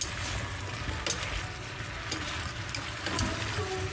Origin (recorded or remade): recorded